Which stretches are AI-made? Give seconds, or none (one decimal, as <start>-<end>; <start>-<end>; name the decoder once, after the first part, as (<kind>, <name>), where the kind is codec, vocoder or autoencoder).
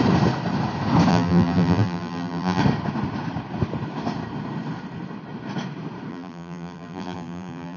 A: 1.1-2.6 (vocoder, BigVGAN v2); 6.1-7.8